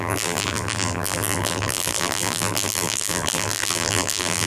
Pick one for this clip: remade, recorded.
remade